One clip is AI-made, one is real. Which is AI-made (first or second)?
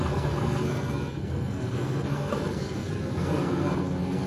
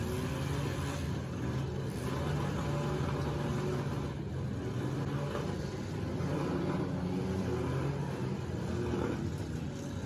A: first